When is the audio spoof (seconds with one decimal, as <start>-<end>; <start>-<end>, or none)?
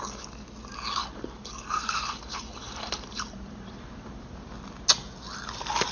1.0-4.5